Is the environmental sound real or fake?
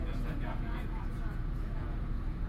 fake